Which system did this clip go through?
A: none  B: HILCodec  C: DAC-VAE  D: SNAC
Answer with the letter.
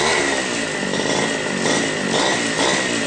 A